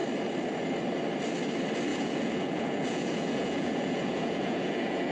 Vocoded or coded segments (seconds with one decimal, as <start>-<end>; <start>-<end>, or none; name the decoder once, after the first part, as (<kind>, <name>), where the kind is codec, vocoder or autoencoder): 1.9-5.1 (vocoder, Vocos)